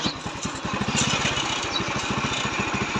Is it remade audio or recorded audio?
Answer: recorded